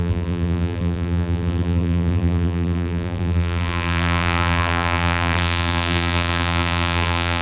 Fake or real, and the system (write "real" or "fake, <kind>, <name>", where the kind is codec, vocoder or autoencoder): fake, vocoder, BigVGAN v2